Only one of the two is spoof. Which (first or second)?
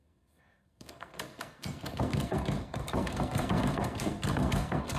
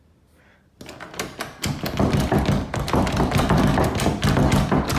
first